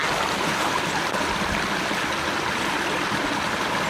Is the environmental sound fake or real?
real